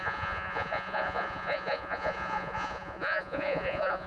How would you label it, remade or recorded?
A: remade